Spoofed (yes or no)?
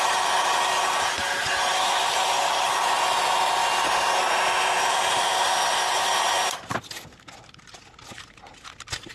no